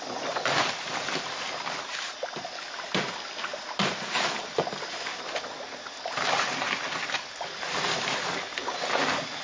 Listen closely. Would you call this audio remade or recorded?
recorded